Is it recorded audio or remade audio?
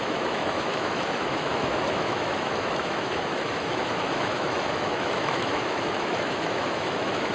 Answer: remade